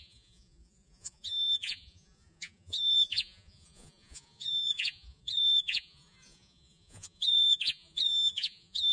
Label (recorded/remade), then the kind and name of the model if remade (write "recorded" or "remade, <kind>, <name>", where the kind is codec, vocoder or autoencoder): remade, vocoder, Vocos